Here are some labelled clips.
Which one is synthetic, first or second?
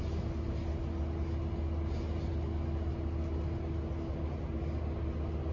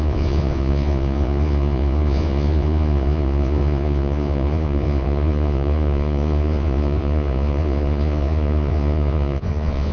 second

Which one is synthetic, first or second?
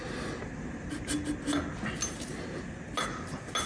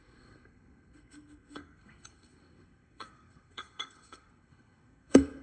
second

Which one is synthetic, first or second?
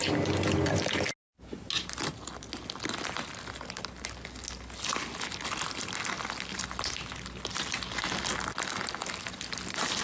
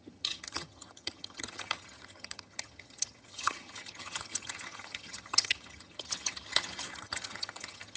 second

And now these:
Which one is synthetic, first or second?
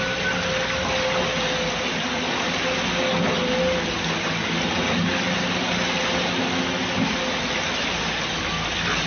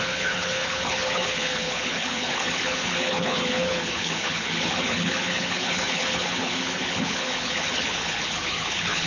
second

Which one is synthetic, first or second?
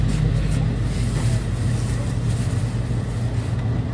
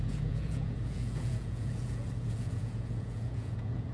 second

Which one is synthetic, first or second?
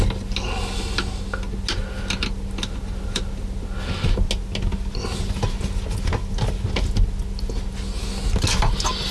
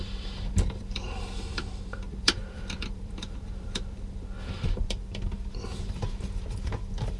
second